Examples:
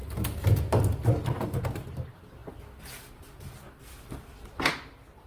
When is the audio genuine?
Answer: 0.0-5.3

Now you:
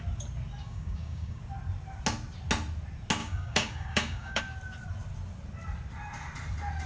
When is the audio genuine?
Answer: 0.0-0.6; 1.4-3.2; 4.4-6.9